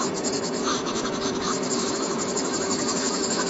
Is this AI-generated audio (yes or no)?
yes